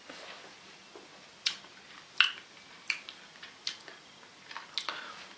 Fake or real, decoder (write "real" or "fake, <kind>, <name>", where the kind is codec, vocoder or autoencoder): real